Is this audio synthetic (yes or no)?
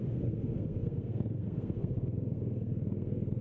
yes